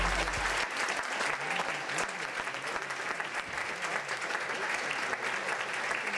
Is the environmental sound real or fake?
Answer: real